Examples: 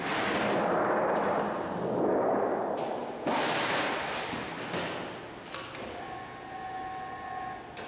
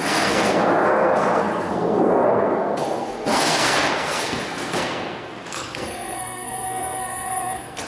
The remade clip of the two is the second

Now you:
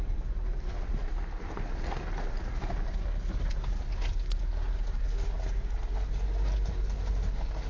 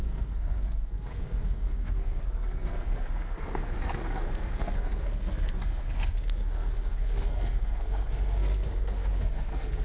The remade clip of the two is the second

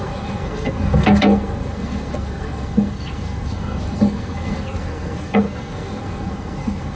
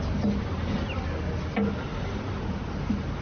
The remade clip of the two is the first